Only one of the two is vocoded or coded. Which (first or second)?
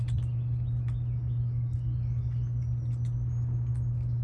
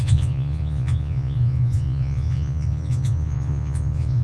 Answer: second